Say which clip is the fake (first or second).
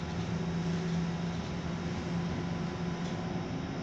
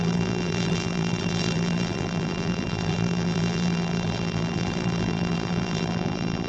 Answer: second